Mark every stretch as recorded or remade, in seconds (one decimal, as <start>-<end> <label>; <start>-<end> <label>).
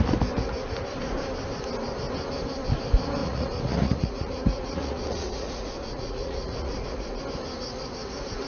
0.0-3.2 recorded; 3.2-7.2 remade; 7.2-8.5 recorded